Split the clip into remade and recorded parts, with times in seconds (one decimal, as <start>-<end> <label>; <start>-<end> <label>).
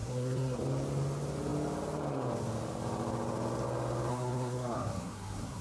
0.0-0.6 remade; 0.6-4.1 recorded; 4.1-5.6 remade